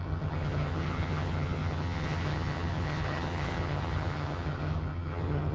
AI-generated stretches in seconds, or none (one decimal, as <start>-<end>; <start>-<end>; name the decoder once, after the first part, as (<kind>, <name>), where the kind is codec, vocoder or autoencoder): 0.0-5.5 (vocoder, HiFi-GAN)